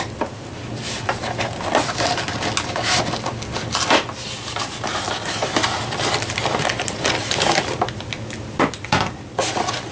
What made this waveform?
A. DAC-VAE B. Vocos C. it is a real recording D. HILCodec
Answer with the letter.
C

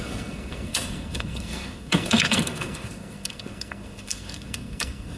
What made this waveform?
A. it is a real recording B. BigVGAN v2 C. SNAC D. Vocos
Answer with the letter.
C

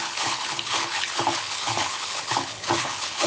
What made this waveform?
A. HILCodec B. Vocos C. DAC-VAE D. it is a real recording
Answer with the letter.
A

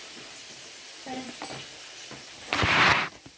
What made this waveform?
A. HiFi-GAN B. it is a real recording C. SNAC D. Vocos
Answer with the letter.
B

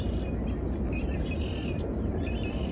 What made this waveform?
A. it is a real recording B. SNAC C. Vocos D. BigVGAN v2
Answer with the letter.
A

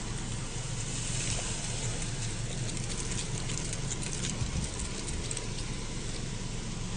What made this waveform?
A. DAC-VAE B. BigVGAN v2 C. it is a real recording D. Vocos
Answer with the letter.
C